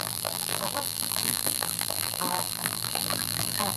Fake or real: fake